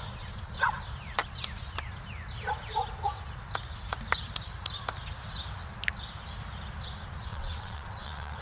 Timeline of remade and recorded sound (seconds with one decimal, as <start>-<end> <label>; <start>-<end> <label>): 0.0-7.3 recorded; 7.3-8.4 remade